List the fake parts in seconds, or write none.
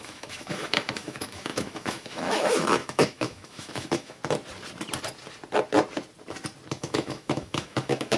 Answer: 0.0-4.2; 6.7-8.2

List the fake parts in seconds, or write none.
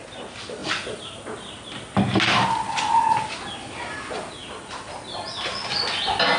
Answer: none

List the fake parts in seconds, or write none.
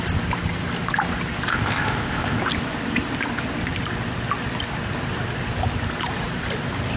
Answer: 1.5-2.4